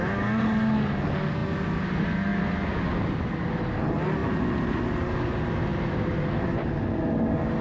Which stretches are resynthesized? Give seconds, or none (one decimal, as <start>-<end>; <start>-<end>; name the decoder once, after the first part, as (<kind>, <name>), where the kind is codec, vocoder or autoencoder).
none